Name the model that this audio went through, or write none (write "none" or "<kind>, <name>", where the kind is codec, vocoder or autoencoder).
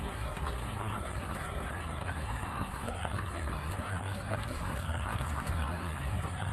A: codec, SNAC